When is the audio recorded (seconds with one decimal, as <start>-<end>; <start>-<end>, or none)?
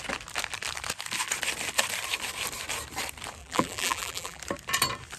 0.0-3.4; 4.4-5.2